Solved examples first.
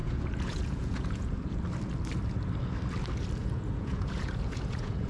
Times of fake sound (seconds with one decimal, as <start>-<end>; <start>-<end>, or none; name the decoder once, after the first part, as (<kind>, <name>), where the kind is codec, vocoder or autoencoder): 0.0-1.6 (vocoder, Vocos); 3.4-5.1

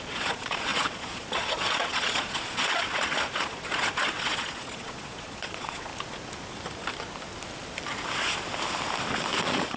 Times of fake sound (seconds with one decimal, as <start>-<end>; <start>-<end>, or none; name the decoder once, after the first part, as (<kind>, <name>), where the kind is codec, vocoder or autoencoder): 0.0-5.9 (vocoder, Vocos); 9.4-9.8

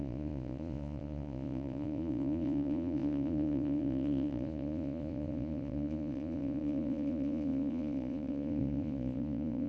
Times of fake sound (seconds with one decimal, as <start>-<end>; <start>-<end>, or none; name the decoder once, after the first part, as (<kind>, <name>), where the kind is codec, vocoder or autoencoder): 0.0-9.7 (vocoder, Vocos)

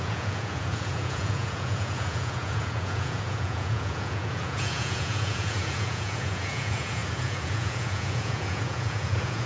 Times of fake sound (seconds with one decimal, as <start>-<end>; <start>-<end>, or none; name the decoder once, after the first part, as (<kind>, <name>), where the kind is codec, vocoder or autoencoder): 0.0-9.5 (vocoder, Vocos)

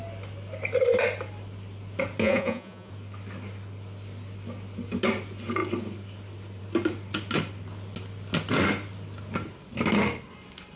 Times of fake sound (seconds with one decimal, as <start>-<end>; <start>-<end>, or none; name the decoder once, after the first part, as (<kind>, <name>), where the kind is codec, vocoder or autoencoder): 2.2-2.9 (vocoder, Vocos)

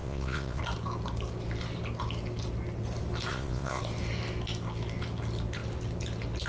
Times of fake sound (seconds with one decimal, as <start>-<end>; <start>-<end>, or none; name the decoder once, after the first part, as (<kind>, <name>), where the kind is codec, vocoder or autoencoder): 0.0-0.6 (vocoder, Vocos); 3.3-3.8

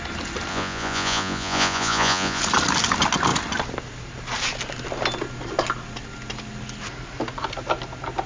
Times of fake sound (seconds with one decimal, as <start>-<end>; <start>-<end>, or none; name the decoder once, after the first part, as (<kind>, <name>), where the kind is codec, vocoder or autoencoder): 0.5-2.4 (vocoder, Vocos)

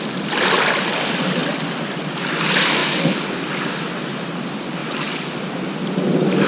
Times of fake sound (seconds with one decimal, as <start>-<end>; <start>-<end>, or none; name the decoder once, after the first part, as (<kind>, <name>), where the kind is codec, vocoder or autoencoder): none